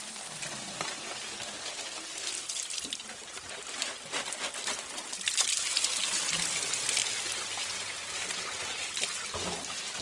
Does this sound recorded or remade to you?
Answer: recorded